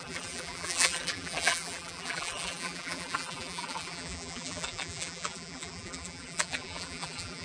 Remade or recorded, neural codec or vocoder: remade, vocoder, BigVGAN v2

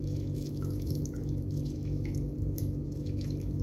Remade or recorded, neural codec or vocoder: remade, autoencoder, DAC-VAE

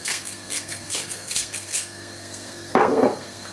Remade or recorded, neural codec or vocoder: remade, codec, SNAC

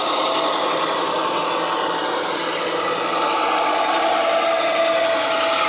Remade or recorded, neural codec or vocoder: recorded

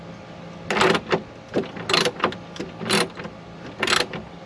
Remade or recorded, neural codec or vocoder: recorded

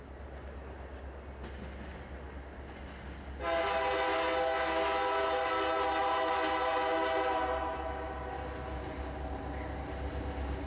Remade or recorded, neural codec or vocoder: recorded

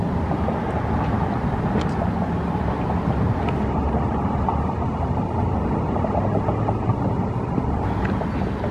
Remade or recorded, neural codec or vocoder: recorded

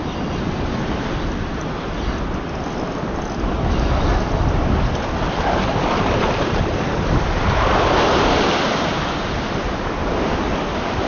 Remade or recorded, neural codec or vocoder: recorded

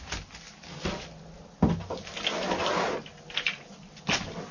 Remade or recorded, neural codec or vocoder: recorded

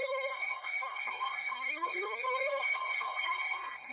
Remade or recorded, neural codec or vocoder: remade, codec, SNAC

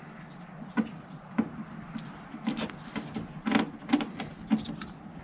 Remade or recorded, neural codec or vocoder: recorded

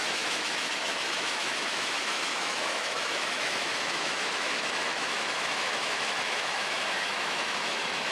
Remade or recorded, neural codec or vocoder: remade, autoencoder, DAC-VAE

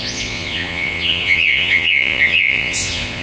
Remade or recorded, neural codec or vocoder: remade, vocoder, Vocos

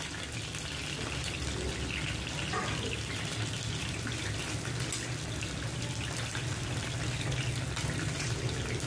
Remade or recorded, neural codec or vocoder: recorded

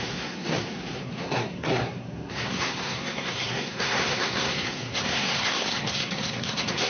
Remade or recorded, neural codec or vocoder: remade, codec, SNAC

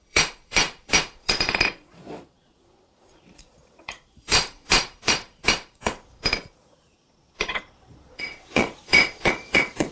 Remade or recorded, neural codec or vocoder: remade, vocoder, Vocos